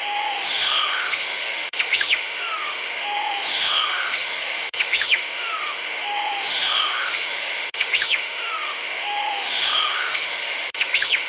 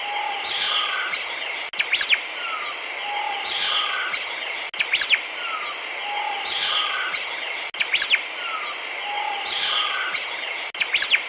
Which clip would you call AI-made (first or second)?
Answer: first